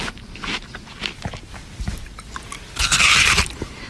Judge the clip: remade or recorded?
recorded